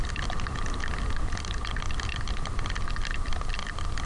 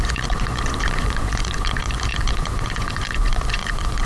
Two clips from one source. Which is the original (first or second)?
first